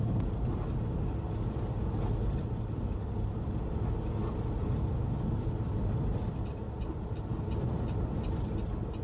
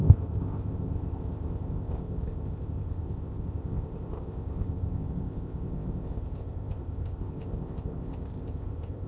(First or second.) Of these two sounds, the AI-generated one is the second